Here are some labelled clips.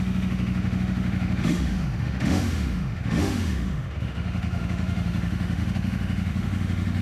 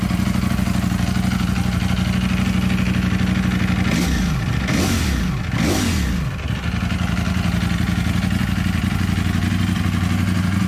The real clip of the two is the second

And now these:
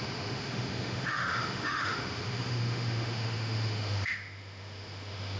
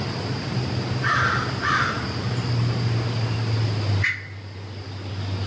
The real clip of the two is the second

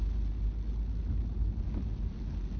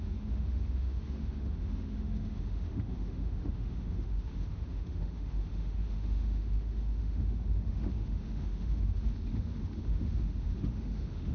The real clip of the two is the first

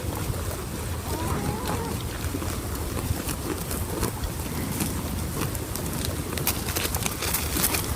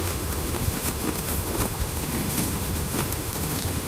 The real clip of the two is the first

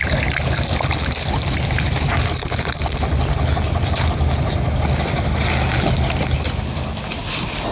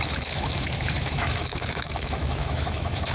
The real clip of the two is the first